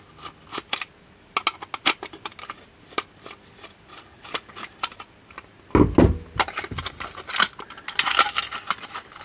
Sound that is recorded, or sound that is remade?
recorded